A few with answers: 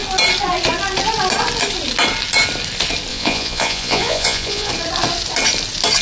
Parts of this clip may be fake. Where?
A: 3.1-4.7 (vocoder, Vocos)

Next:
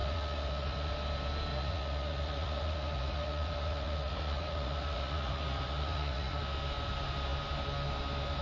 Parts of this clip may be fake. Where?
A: 0.0-0.9 (vocoder, Vocos); 1.5-6.4

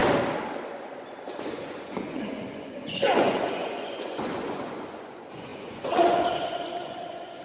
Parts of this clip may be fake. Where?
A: 0.7-7.4 (vocoder, Vocos)

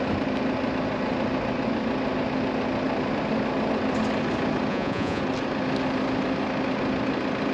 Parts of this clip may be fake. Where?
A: 4.7-5.2 (vocoder, Vocos)

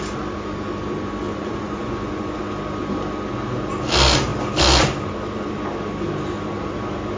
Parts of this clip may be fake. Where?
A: 1.3-2.4 (vocoder, Vocos)